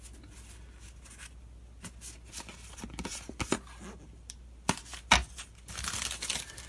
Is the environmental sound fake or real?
real